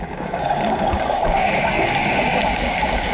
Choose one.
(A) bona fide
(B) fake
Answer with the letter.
B